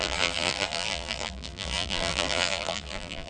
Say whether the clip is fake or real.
fake